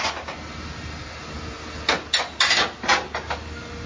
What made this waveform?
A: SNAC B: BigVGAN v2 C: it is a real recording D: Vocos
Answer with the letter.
C